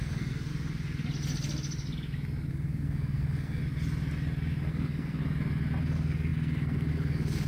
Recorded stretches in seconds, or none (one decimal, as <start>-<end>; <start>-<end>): 0.5-2.5; 3.6-4.7; 5.2-5.8